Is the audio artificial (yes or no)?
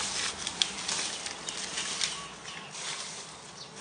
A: no